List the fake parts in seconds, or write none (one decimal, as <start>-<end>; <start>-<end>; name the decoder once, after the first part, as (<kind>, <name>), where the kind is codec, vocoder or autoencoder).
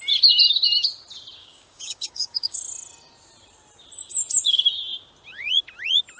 1.4-2.6 (codec, DAC)